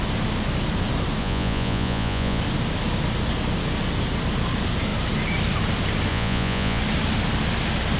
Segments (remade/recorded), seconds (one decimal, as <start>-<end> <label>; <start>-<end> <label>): 0.0-1.2 recorded; 1.2-2.4 remade; 2.4-6.1 recorded; 6.1-6.8 remade; 6.8-8.0 recorded